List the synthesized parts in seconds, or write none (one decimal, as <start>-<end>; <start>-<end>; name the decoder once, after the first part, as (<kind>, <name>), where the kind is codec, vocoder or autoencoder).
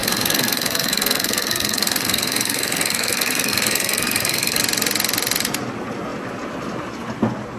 0.0-4.6 (codec, SNAC)